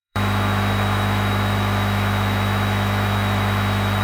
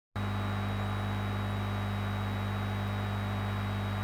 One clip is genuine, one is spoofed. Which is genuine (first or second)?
second